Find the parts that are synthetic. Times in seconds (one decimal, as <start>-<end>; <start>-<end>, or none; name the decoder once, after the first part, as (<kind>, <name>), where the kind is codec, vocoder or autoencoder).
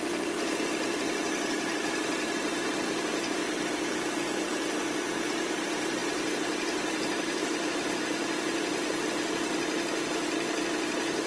0.0-3.1 (vocoder, BigVGAN v2); 5.3-8.8